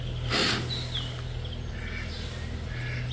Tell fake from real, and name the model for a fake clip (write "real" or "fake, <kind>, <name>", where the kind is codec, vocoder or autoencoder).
real